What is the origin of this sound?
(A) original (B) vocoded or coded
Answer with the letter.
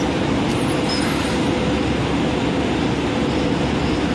A